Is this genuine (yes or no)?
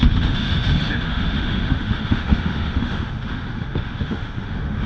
no